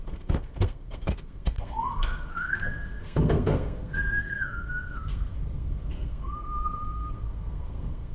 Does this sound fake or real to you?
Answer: fake